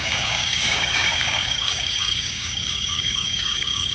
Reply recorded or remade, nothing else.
remade